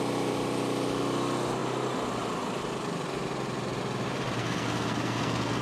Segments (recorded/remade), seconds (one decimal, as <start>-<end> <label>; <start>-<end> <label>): 0.0-4.4 recorded; 4.4-5.6 remade